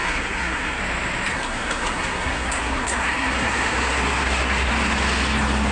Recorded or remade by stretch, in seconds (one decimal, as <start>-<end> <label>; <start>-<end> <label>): 0.0-0.8 remade; 0.8-1.3 recorded; 1.3-4.7 remade; 4.7-5.7 recorded